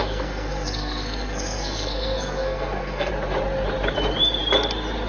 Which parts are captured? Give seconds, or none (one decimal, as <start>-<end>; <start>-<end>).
3.1-5.1